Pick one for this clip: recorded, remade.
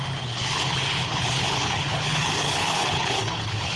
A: remade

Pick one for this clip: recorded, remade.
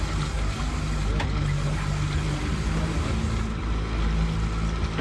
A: recorded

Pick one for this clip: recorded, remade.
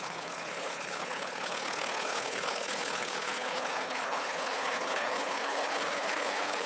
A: remade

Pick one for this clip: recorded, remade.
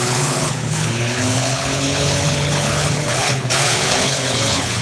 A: remade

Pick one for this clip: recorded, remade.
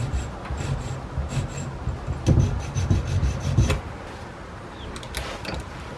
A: recorded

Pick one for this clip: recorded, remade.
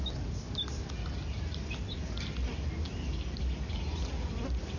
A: recorded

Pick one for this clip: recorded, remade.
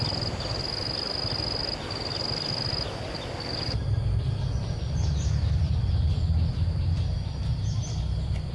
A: recorded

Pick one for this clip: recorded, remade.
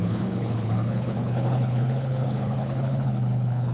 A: remade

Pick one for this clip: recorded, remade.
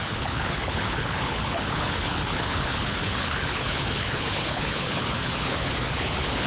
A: remade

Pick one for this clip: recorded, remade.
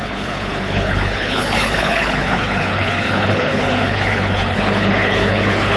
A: remade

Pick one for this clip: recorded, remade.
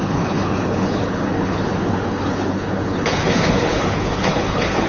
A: remade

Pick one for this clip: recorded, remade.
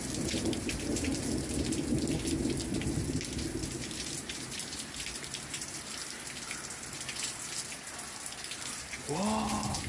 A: recorded